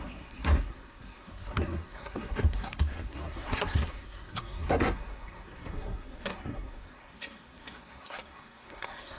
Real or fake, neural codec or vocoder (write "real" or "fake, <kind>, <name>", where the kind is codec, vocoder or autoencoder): fake, codec, SNAC